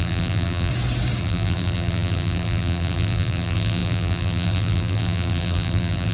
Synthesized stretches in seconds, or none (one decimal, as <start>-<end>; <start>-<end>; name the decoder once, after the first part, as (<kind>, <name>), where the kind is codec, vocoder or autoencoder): 0.0-0.7 (vocoder, BigVGAN v2); 1.2-6.1